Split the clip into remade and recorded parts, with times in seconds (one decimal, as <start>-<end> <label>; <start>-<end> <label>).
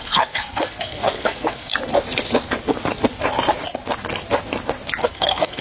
0.0-1.7 remade; 1.7-5.0 recorded; 5.0-5.6 remade